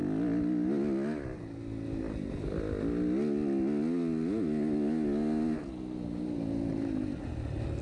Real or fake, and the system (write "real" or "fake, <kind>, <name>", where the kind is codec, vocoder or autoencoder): real